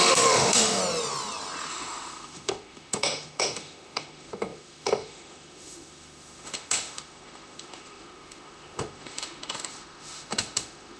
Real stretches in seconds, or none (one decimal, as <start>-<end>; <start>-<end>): 0.8-1.7